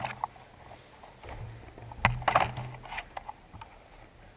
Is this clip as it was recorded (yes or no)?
yes